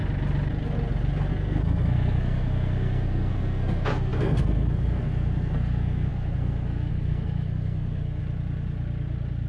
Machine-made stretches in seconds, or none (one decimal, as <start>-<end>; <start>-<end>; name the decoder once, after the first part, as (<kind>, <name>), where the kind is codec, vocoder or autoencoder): 1.3-8.2 (codec, SNAC)